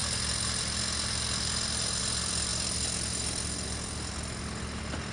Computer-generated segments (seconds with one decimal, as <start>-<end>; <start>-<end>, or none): none